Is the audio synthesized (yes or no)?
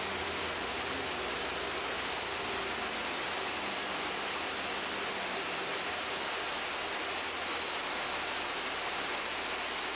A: no